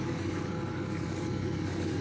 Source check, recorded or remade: remade